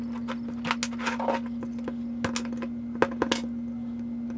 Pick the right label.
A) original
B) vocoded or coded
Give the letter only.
A